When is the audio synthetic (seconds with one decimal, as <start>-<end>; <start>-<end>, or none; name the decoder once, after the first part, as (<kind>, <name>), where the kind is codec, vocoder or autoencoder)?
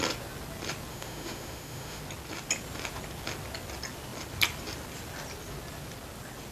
0.9-2.0 (autoencoder, DAC-VAE)